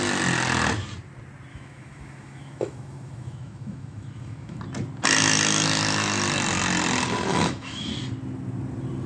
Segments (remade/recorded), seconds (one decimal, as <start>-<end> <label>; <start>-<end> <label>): 0.0-1.5 recorded; 1.5-4.6 remade; 4.6-7.3 recorded; 7.3-7.9 remade; 7.9-9.1 recorded